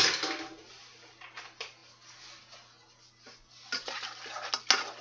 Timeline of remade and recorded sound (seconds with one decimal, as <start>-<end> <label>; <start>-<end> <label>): 0.0-5.0 recorded